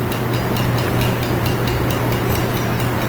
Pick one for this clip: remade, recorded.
recorded